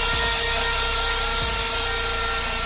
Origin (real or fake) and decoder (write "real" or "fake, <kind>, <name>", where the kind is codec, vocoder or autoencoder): real